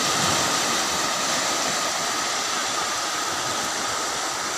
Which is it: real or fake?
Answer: real